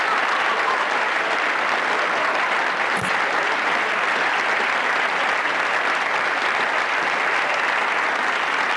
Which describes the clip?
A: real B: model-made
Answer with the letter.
A